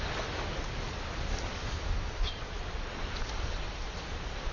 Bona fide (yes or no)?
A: yes